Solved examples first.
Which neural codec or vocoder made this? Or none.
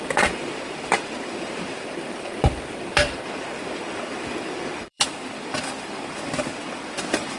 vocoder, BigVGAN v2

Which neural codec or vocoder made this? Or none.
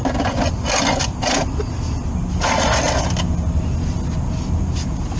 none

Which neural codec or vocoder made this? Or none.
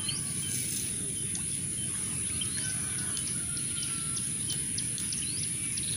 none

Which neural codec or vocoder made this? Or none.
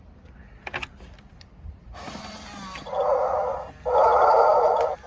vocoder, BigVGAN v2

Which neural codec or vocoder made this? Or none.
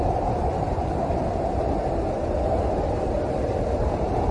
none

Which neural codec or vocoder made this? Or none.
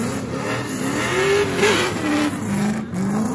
none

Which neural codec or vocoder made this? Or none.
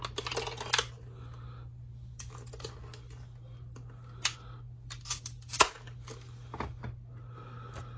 none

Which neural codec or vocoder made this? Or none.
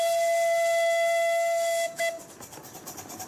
none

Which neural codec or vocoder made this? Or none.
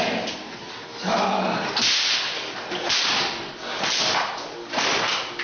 none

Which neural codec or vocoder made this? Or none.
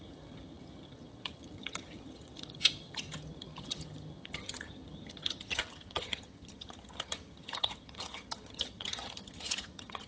vocoder, HiFi-GAN